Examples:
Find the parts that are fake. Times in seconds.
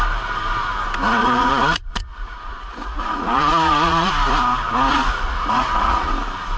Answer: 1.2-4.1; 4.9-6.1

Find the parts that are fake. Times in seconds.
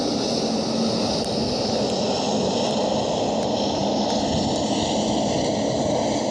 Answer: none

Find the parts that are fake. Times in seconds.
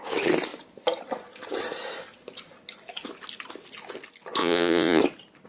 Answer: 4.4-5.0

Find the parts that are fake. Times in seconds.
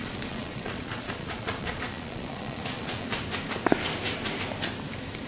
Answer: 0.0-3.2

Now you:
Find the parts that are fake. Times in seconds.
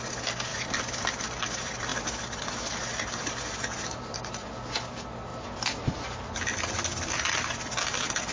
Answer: none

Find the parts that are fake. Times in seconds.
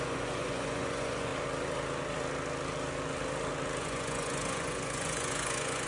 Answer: 0.0-1.3; 3.8-5.9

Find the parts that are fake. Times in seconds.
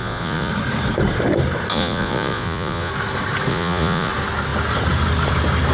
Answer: 0.0-0.5; 1.7-2.9; 3.5-4.1